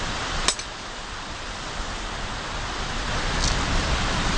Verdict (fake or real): real